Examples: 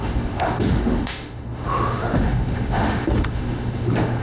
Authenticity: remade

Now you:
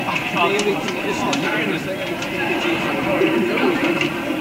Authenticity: remade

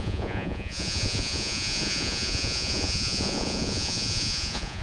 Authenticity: remade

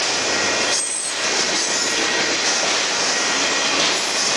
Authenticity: recorded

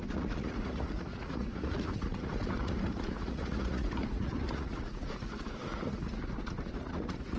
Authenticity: remade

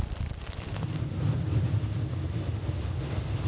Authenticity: recorded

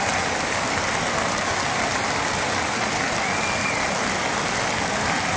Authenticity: recorded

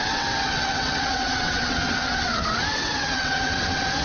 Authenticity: remade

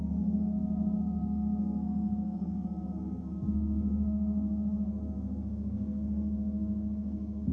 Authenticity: remade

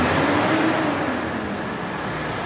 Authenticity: recorded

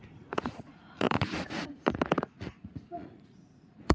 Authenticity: remade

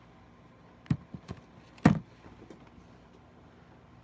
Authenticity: recorded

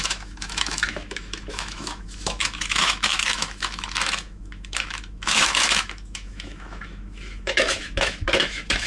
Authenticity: remade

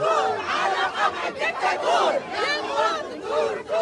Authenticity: recorded